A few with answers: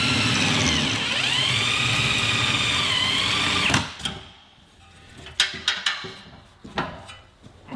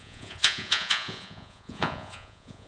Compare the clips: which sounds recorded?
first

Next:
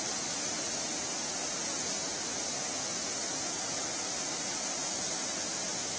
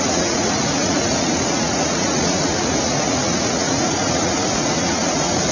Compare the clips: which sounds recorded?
first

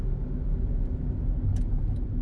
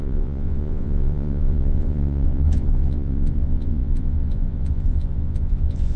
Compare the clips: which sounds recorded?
first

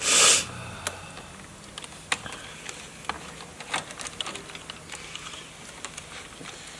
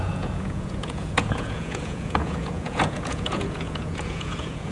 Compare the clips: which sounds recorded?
first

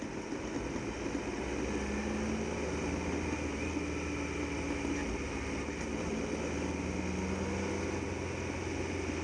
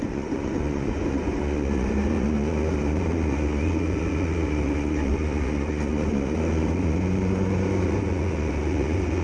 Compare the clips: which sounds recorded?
first